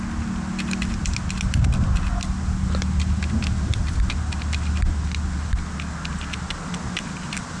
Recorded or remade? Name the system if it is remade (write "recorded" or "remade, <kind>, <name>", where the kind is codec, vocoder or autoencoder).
recorded